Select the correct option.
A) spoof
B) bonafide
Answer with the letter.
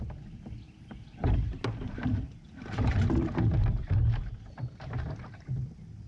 B